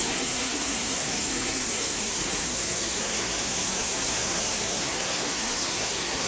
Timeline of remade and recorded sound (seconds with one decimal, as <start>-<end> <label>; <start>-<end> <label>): 0.0-6.3 remade